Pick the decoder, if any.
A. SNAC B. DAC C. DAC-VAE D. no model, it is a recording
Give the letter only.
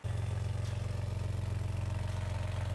D